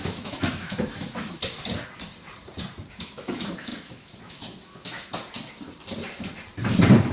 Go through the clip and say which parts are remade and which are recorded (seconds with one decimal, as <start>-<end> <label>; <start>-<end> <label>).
0.0-1.4 remade; 1.4-2.9 recorded; 2.9-5.1 remade; 5.1-7.1 recorded